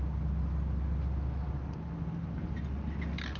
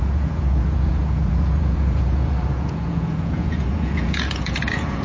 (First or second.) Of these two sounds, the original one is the first